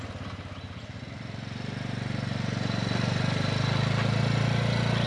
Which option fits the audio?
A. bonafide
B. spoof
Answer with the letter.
A